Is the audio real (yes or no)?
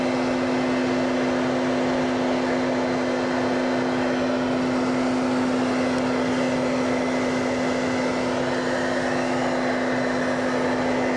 yes